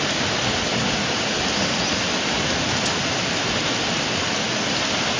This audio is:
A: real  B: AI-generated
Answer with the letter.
A